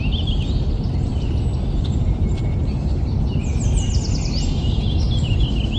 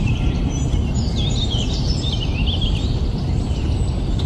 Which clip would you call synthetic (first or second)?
second